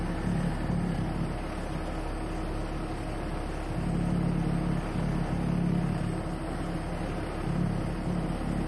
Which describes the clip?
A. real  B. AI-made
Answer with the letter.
A